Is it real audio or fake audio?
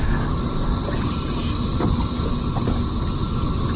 real